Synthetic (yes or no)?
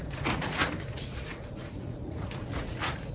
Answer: yes